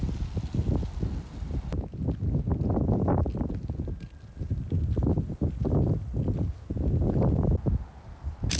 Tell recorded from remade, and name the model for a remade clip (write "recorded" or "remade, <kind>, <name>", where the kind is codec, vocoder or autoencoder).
recorded